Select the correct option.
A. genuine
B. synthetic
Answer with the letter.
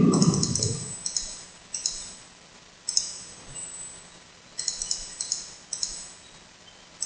A